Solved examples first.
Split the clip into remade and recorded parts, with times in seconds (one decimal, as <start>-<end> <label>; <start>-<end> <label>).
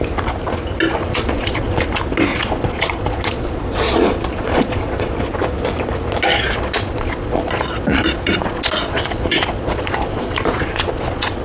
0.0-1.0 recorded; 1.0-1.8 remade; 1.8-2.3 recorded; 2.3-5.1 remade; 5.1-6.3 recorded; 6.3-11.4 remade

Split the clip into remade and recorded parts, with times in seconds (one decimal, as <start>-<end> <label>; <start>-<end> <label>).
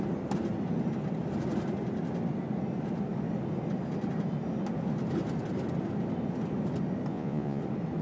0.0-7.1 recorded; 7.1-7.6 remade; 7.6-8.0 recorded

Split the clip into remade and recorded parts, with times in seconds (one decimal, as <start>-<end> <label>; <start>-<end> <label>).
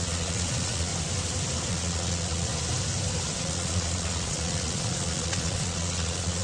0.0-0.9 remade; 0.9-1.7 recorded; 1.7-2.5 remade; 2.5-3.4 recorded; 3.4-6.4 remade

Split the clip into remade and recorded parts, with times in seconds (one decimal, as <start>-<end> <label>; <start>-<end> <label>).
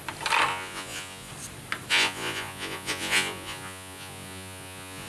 0.0-0.5 recorded; 0.5-1.3 remade; 1.3-1.9 recorded; 1.9-5.1 remade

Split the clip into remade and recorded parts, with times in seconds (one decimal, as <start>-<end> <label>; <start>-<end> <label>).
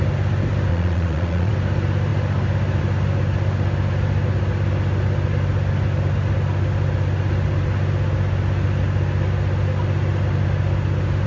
0.0-0.7 recorded; 0.7-1.5 remade; 1.5-11.3 recorded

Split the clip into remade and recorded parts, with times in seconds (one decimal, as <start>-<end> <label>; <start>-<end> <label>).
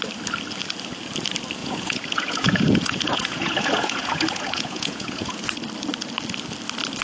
0.0-1.6 recorded; 1.6-5.4 remade; 5.4-7.0 recorded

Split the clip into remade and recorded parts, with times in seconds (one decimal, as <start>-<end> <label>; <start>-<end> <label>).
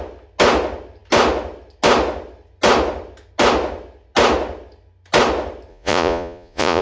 0.0-5.7 recorded; 5.7-6.8 remade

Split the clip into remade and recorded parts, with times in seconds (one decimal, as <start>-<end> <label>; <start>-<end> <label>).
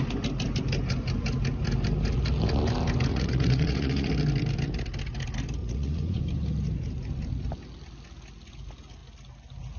0.0-3.1 recorded; 3.1-4.1 remade; 4.1-5.6 recorded; 5.6-6.2 remade; 6.2-9.8 recorded